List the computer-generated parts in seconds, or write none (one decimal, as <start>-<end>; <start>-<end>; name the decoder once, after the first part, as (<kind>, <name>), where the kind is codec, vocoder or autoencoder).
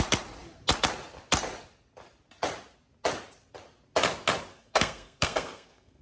4.5-6.0 (codec, SNAC)